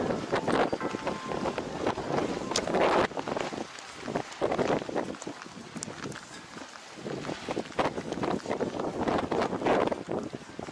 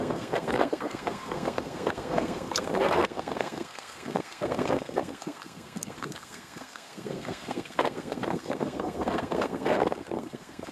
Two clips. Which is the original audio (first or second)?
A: first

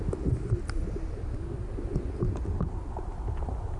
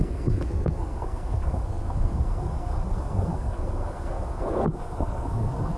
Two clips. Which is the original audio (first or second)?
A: first